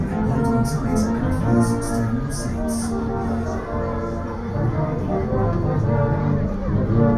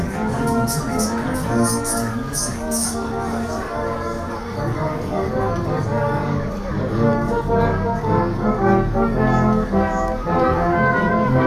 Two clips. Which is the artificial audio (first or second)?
second